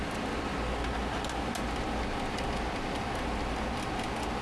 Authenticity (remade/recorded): recorded